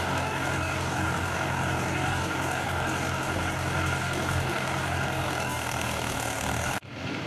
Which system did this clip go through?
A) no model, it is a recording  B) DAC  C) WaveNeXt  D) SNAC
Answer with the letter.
B